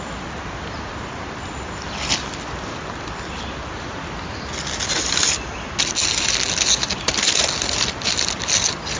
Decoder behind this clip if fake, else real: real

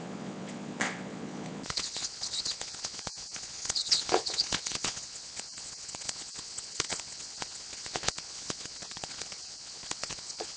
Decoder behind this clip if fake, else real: fake, vocoder, Vocos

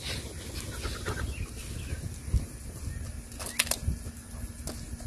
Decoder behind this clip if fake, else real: real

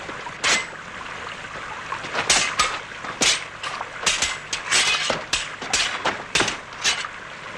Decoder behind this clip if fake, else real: real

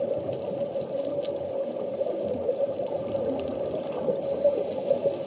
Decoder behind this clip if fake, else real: real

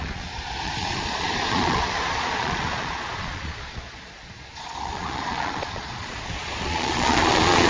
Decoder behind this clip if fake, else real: fake, vocoder, Vocos